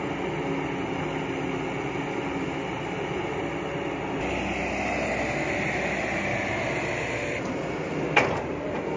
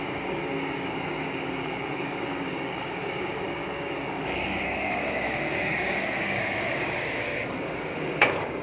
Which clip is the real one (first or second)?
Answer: first